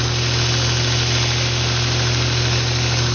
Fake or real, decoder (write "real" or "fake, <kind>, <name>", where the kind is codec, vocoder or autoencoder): real